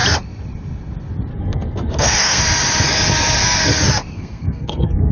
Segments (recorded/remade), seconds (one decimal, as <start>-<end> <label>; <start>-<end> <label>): 0.0-1.3 recorded; 1.3-2.4 remade; 2.4-4.1 recorded; 4.1-5.1 remade